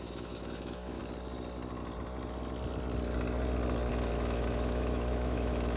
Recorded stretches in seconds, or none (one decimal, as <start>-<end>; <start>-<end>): 1.0-3.9

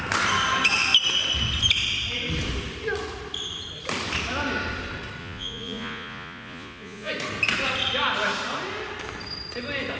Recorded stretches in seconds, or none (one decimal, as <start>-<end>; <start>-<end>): 0.0-5.2; 7.1-10.0

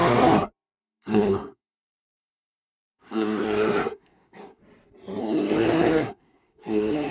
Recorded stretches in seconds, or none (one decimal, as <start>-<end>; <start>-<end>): 4.6-5.2

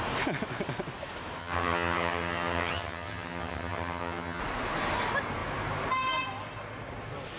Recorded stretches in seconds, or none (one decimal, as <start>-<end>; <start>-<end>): 0.0-1.4; 4.4-7.4

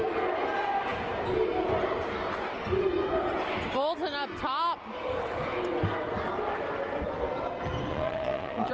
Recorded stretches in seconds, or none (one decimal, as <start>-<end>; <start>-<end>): 0.0-7.9

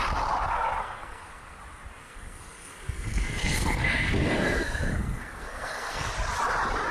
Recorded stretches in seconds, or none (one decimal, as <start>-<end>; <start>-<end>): 0.0-0.8; 1.6-2.0; 6.1-6.9

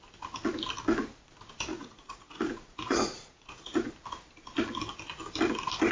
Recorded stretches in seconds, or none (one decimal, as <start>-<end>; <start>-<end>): 0.0-1.7; 3.9-5.9